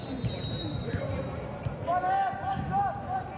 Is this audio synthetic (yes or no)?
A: no